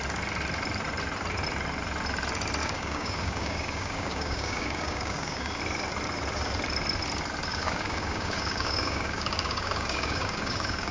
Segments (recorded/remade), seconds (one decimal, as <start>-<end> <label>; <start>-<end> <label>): 0.0-2.6 recorded; 2.6-5.6 remade; 5.6-7.5 recorded; 7.5-10.9 remade